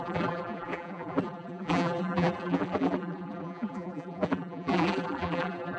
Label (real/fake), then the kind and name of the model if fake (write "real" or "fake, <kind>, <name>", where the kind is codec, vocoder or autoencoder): fake, vocoder, BigVGAN v2